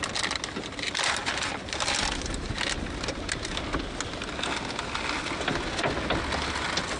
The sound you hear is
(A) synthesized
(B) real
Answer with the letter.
B